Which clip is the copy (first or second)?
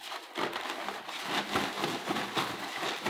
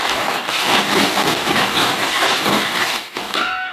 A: second